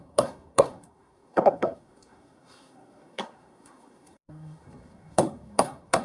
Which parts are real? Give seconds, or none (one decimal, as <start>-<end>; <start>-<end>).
none